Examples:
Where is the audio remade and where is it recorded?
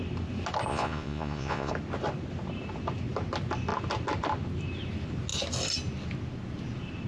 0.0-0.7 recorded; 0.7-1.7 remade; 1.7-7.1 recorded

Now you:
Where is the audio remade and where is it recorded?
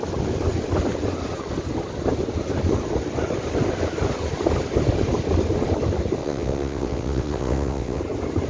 0.0-6.2 recorded; 6.2-8.0 remade; 8.0-8.5 recorded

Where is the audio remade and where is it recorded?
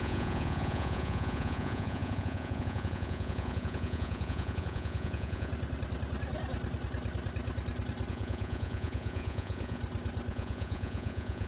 0.0-5.5 remade; 5.5-8.1 recorded; 8.1-9.8 remade; 9.8-10.3 recorded; 10.3-11.5 remade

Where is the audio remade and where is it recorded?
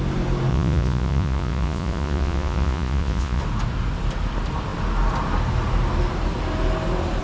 0.0-0.5 recorded; 0.5-3.4 remade; 3.4-7.2 recorded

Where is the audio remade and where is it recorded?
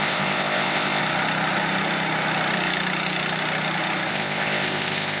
0.0-1.0 remade; 1.0-4.1 recorded; 4.1-5.2 remade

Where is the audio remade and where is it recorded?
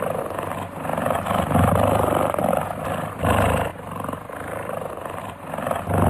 0.0-3.7 recorded; 3.7-5.5 remade; 5.5-6.1 recorded